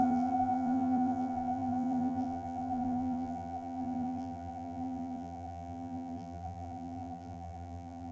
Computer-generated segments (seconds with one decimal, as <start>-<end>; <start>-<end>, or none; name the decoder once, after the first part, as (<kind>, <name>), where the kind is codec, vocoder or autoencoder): 0.0-8.1 (vocoder, BigVGAN v2)

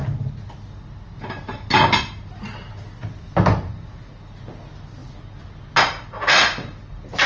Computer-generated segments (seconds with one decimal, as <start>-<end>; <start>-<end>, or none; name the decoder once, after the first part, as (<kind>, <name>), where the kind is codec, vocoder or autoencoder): none